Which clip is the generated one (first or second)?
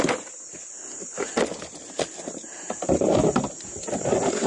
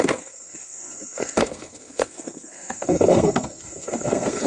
second